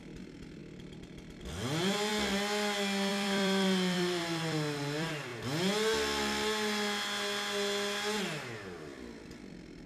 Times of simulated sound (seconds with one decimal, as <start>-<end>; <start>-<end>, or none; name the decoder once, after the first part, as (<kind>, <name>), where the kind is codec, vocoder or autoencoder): 0.0-2.1 (vocoder, BigVGAN v2); 3.1-5.3; 9.3-9.9

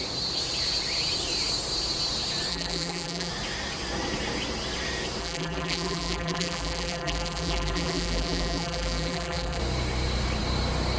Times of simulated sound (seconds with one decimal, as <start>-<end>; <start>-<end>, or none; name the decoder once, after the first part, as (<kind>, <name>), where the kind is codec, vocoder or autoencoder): 2.5-3.3 (vocoder, BigVGAN v2); 5.2-9.6

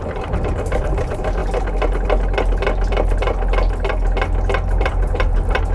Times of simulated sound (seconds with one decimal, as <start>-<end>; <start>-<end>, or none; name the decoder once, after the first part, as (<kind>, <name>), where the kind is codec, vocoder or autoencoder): 0.0-1.4 (vocoder, BigVGAN v2); 4.8-5.7